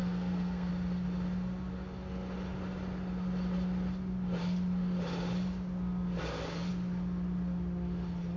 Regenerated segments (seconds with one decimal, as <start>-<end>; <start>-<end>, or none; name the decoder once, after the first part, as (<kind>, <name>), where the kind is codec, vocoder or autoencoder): 0.0-0.7 (codec, SNAC)